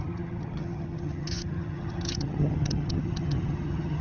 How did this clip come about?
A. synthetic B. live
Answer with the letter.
A